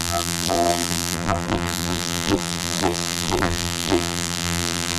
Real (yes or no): no